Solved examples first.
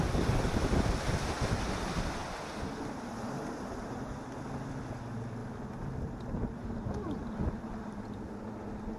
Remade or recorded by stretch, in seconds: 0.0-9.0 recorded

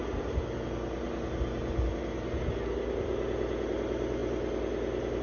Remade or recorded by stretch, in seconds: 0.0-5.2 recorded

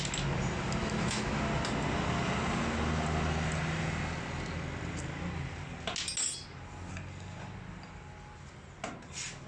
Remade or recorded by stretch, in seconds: 0.0-0.8 recorded; 0.8-1.4 remade; 1.4-9.5 recorded

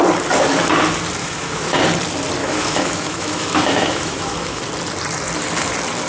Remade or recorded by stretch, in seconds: 0.0-1.2 recorded; 1.2-1.8 remade; 1.8-2.4 recorded; 2.4-4.6 remade; 4.6-6.1 recorded

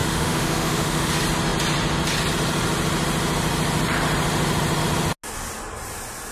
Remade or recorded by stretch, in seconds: 0.0-1.1 remade; 1.1-6.3 recorded

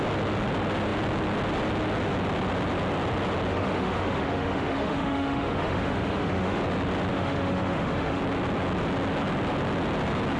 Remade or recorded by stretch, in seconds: 0.0-3.5 recorded; 3.5-6.6 remade; 6.6-7.1 recorded; 7.1-8.2 remade; 8.2-10.4 recorded

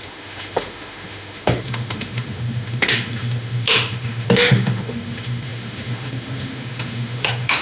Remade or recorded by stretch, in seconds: 0.0-7.6 remade

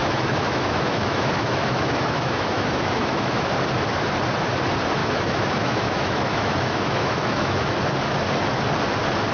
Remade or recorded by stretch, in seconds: 0.0-3.5 remade; 3.5-5.0 recorded; 5.0-7.7 remade; 7.7-9.3 recorded